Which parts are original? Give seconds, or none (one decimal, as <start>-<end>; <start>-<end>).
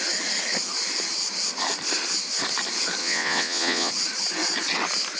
0.0-3.0; 3.9-5.2